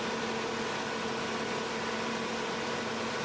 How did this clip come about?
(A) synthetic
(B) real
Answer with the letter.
B